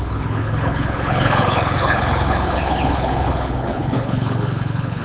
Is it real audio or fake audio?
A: fake